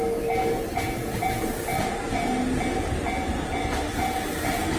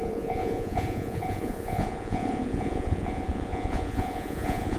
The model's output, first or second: second